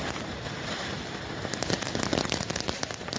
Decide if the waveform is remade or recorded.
remade